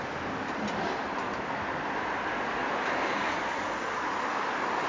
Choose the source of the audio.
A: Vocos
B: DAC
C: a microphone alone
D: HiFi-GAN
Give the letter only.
C